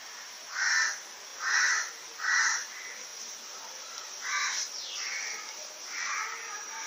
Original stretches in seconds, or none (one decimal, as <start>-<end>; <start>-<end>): 0.0-6.9